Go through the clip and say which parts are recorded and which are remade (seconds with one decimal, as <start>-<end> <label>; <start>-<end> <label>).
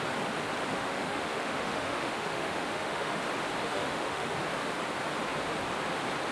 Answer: 0.0-0.7 recorded; 0.7-3.2 remade; 3.2-3.6 recorded; 3.6-4.4 remade; 4.4-6.3 recorded